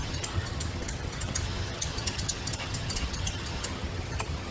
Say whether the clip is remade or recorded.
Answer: remade